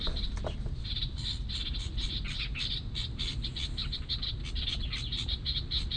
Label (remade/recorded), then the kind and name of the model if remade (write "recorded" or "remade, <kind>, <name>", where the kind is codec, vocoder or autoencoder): recorded